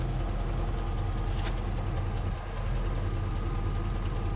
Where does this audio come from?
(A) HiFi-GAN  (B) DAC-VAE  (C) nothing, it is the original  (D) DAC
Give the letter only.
C